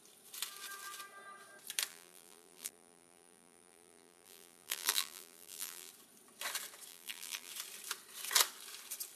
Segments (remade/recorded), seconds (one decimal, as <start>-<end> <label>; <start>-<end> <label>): 0.0-1.9 recorded; 1.9-5.9 remade; 5.9-6.9 recorded; 6.9-7.5 remade; 7.5-9.2 recorded